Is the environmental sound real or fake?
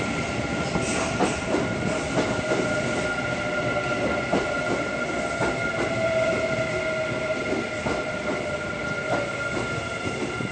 real